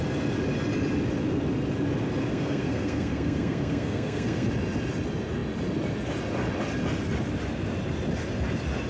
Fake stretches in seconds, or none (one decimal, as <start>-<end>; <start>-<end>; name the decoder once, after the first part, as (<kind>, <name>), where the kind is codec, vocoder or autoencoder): 2.3-4.5 (codec, SNAC)